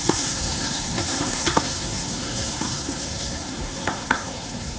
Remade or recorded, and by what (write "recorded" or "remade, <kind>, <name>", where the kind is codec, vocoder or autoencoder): remade, codec, SNAC